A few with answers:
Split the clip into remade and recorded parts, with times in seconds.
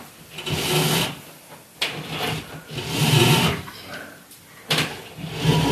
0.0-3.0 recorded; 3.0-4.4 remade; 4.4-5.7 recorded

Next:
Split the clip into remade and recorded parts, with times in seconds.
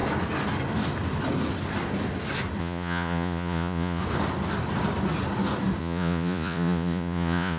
0.0-2.6 recorded; 2.6-4.0 remade; 4.0-5.8 recorded; 5.8-7.6 remade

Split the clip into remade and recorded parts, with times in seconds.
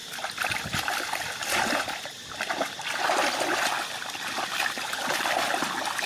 0.0-6.1 recorded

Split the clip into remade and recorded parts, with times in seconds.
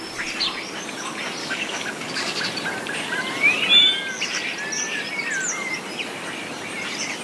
0.0-1.4 recorded; 1.4-2.4 remade; 2.4-7.2 recorded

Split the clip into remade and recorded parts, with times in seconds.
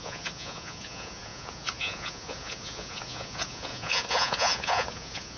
0.0-5.4 remade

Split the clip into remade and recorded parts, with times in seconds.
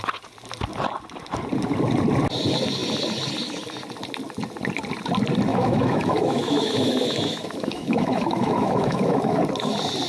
0.0-5.5 recorded; 5.5-9.4 remade; 9.4-10.1 recorded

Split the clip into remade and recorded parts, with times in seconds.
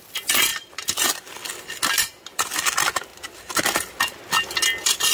0.0-5.1 recorded